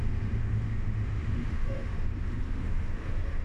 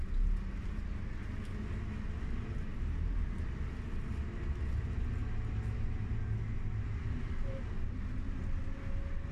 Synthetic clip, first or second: first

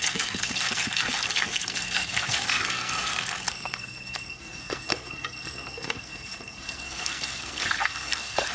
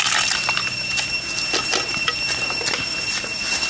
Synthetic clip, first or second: first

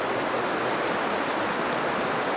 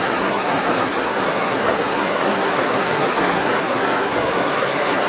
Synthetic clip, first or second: second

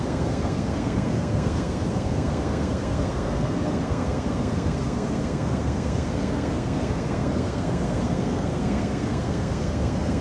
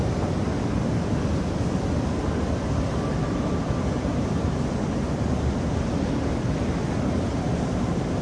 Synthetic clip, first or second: first